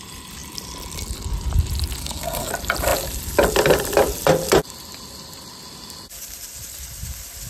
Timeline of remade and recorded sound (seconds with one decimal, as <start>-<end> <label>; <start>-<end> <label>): 0.0-2.0 recorded; 2.0-2.5 remade; 2.5-7.5 recorded